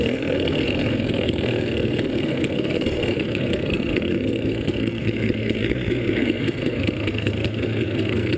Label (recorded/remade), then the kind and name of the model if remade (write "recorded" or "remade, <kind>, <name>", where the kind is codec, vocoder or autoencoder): remade, codec, SNAC